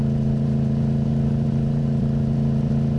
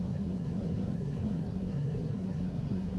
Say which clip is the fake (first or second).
second